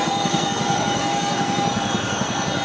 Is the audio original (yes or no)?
no